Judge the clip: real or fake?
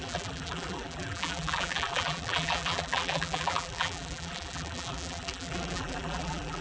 fake